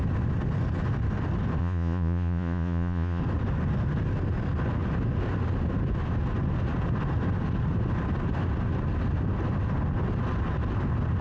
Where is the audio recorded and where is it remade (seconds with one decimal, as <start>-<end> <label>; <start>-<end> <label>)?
0.0-1.6 recorded; 1.6-3.2 remade; 3.2-11.2 recorded